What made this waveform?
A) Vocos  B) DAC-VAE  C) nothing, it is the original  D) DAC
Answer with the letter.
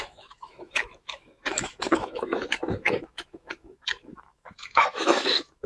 B